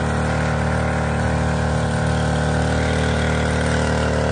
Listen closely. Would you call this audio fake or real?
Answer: real